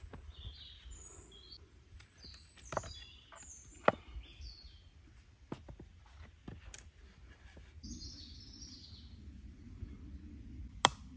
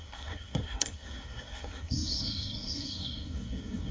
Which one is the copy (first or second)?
second